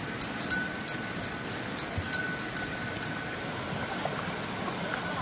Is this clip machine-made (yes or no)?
no